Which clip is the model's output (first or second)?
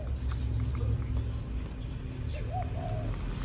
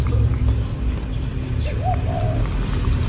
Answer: second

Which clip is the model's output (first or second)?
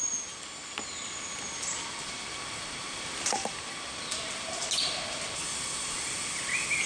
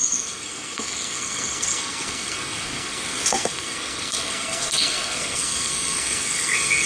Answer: second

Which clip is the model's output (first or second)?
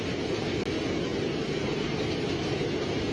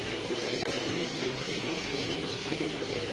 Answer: second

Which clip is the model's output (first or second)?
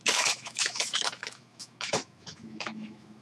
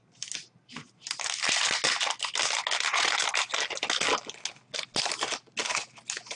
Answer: first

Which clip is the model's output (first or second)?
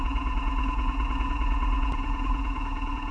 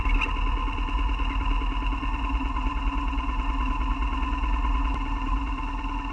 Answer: first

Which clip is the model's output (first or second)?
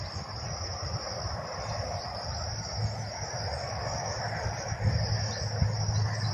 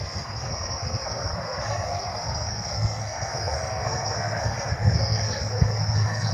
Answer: second